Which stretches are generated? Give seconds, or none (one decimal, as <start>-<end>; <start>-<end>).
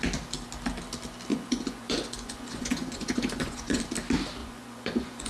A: 1.3-3.8; 4.4-5.3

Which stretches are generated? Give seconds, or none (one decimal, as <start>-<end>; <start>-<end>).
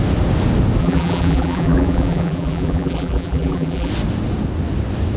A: 0.8-3.9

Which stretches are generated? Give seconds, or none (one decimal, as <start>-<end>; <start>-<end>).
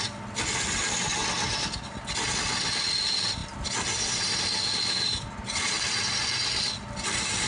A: none